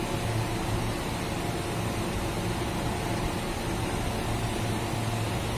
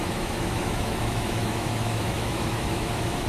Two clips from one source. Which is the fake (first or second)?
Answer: second